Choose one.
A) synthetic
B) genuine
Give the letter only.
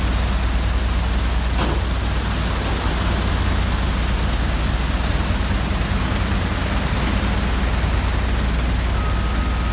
B